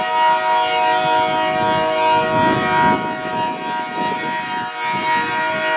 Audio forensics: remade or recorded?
recorded